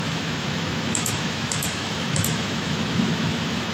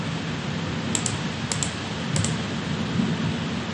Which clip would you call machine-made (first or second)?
first